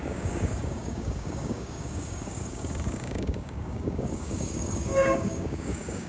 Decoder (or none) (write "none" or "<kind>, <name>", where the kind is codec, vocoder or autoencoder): codec, DAC